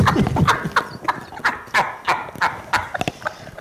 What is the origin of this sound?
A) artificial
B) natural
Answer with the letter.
B